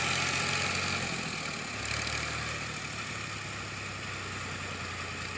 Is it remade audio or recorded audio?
recorded